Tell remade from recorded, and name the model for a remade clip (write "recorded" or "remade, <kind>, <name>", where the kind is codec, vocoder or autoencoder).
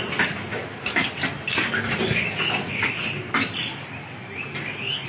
recorded